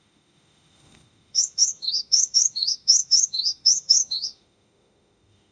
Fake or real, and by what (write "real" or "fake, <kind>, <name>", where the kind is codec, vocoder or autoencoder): fake, autoencoder, DAC-VAE